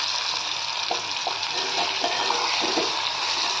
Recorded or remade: recorded